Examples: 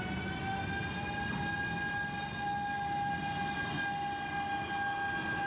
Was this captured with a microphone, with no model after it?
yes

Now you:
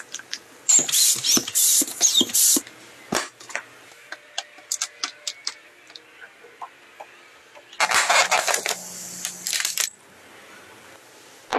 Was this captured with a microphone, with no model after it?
yes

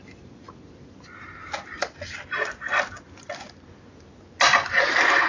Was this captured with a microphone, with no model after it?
yes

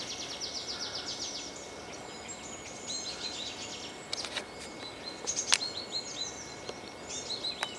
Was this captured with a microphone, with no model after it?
yes